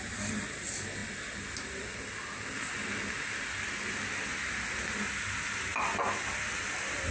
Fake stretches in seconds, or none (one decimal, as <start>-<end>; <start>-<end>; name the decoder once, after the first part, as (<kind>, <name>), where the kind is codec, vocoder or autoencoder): none